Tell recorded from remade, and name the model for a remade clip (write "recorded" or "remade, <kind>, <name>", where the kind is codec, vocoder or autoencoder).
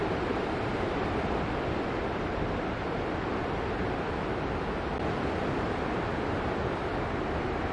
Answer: recorded